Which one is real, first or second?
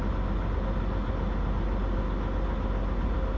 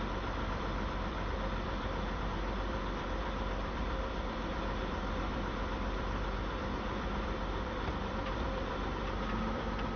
first